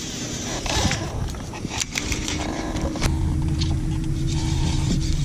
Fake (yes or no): yes